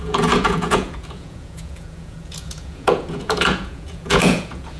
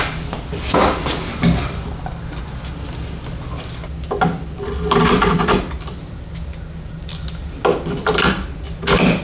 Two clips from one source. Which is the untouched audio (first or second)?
second